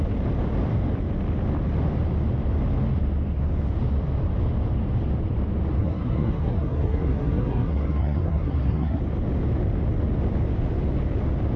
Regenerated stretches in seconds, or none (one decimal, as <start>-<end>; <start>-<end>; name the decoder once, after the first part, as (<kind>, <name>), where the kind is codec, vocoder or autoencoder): 5.8-9.0 (codec, SNAC)